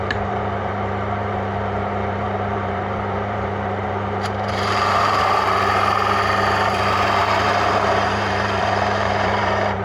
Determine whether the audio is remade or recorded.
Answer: remade